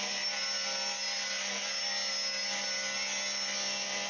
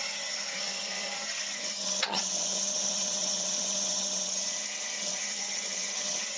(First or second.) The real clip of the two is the first